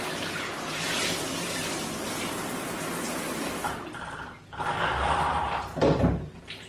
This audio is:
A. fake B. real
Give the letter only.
B